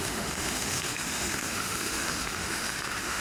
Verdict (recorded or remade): remade